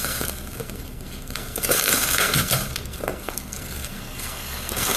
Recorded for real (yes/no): no